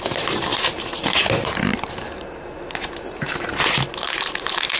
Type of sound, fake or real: fake